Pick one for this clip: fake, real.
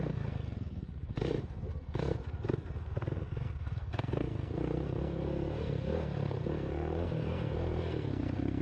fake